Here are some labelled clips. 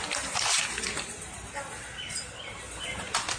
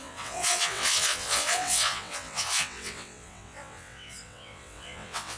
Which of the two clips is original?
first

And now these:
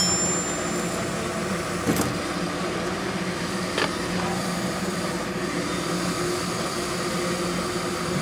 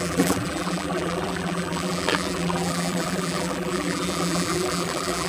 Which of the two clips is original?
first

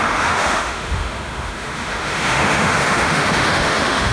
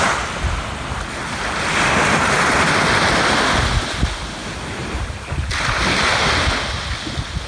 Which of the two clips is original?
second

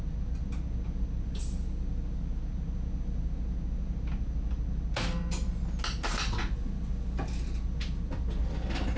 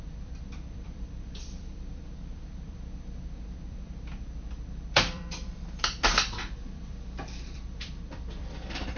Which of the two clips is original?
first